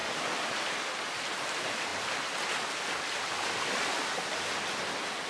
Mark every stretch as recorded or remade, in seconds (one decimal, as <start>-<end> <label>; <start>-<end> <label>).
0.0-5.3 recorded